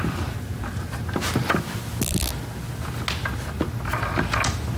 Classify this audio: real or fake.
real